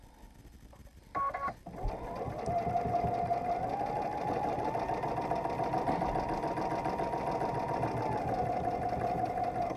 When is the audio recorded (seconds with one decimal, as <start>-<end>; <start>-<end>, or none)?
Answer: 0.0-9.8